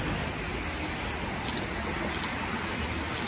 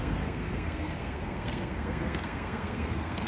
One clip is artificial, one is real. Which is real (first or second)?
first